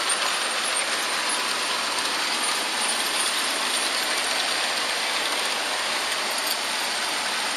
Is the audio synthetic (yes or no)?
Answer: no